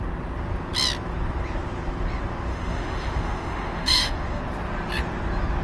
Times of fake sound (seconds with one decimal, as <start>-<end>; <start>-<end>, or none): 2.5-4.4